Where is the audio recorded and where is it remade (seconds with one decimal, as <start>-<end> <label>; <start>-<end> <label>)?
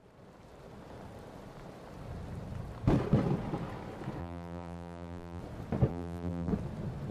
0.0-4.2 recorded; 4.2-5.4 remade; 5.4-5.9 recorded; 5.9-6.5 remade; 6.5-7.1 recorded